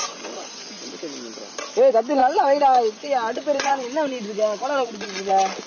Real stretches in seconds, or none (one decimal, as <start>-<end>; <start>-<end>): 0.9-2.2; 5.3-5.7